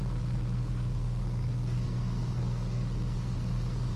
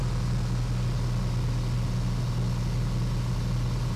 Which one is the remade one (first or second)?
first